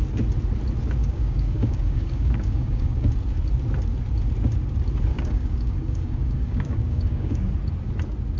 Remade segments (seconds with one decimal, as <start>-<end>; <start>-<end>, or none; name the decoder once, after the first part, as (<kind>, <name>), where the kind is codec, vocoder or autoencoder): 1.0-3.1 (codec, DAC); 5.1-7.5